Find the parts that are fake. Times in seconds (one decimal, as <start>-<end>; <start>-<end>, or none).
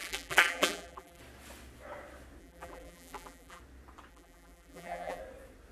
0.0-1.2; 2.4-3.6; 4.1-5.2